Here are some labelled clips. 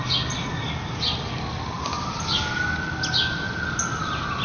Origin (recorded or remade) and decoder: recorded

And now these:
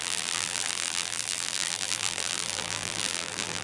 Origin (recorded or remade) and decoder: remade, vocoder, BigVGAN v2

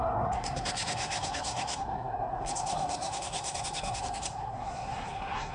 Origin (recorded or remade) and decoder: remade, codec, SNAC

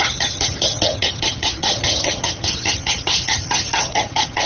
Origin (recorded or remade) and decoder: remade, vocoder, HiFi-GAN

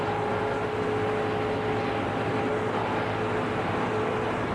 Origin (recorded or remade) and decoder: recorded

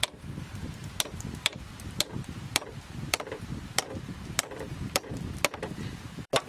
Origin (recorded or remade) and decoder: remade, vocoder, BigVGAN v2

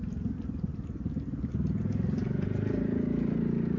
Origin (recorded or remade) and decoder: recorded